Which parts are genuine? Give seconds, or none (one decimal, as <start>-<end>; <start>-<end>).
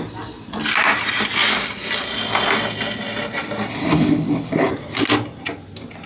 0.0-3.7; 4.7-6.1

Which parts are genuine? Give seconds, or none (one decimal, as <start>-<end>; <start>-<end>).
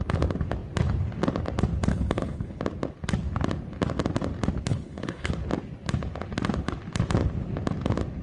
0.0-1.9; 2.6-4.7; 5.3-8.2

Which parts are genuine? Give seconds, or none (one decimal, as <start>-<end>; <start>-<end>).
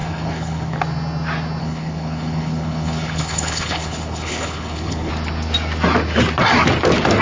0.8-1.6; 5.1-7.2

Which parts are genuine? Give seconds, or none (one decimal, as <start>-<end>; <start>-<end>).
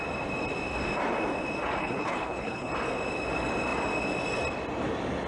0.0-1.8; 2.7-5.3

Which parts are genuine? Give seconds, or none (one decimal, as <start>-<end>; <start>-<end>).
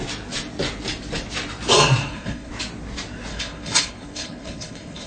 0.0-2.0; 2.5-3.3